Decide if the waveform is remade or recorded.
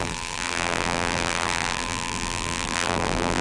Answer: remade